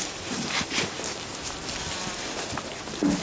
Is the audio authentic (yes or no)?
yes